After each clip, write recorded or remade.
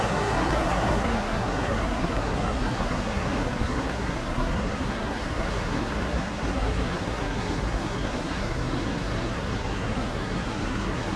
remade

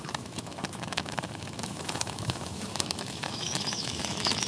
remade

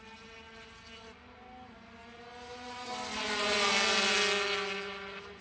recorded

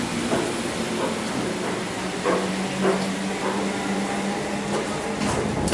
recorded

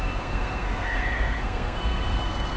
remade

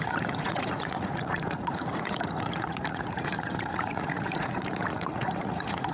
remade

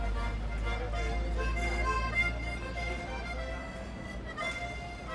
recorded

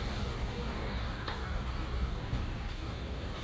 remade